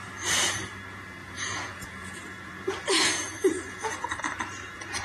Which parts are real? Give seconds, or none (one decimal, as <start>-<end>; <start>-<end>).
0.0-1.2; 4.2-5.0